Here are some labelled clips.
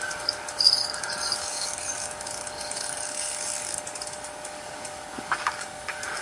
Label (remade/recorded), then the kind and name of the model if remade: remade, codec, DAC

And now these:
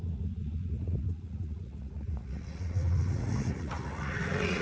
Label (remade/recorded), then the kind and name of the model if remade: remade, vocoder, Vocos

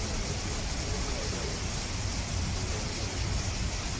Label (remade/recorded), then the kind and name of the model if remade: recorded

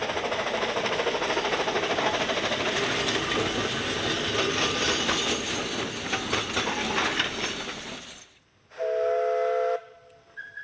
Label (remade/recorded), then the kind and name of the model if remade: recorded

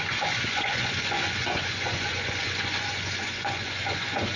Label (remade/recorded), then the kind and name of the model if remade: remade, vocoder, Vocos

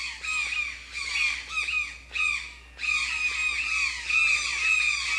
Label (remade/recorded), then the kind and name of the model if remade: recorded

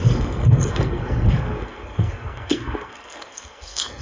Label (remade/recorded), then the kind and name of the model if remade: remade, codec, SNAC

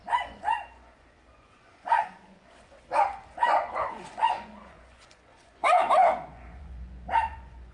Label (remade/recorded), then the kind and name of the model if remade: remade, vocoder, Vocos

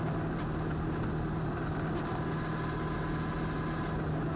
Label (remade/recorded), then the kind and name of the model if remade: recorded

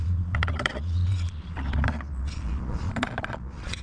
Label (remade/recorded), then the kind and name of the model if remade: remade, vocoder, Vocos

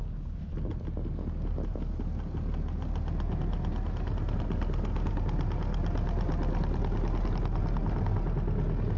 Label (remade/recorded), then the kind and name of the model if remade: recorded